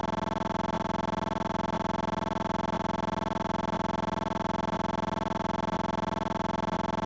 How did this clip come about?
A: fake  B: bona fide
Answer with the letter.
B